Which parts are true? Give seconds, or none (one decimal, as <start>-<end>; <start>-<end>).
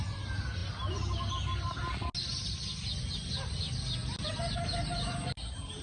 0.0-5.8